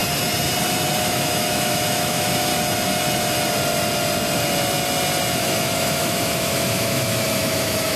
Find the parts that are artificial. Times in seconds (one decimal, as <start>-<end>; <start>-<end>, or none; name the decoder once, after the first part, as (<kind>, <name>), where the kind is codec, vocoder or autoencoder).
1.0-2.5 (autoencoder, DAC-VAE); 5.3-8.0